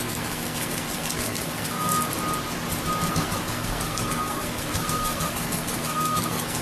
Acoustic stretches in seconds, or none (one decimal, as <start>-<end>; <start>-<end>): 2.1-3.1